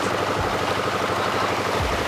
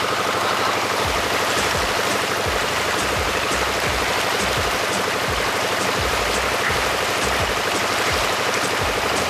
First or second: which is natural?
first